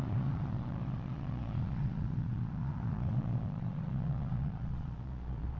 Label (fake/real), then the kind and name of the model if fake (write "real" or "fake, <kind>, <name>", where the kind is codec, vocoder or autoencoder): fake, vocoder, Vocos